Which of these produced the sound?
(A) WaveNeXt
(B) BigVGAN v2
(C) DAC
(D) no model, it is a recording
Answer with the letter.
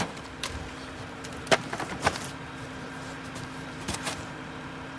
B